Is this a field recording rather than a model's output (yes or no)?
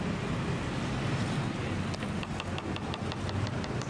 yes